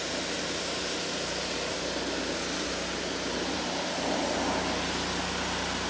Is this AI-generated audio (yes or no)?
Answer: no